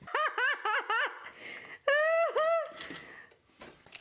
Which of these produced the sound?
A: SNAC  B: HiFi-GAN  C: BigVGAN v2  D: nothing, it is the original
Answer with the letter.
D